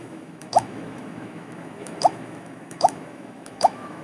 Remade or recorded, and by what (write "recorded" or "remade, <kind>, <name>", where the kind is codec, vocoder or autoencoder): remade, autoencoder, DAC-VAE